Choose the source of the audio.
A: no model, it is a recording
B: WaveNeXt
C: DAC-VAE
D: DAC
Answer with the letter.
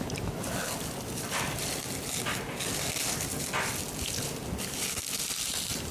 A